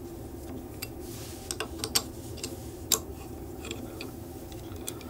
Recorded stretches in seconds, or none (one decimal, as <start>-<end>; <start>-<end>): 0.0-3.1